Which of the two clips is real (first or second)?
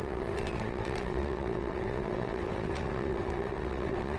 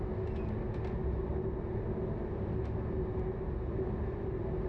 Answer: second